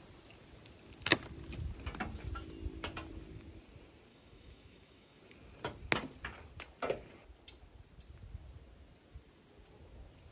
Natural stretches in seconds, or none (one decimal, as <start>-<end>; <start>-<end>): 0.0-4.1; 5.2-10.3